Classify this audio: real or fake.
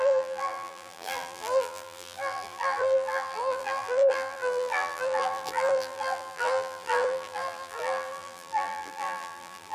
fake